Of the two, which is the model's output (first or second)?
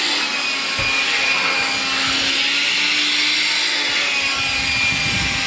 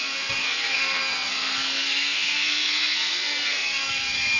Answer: second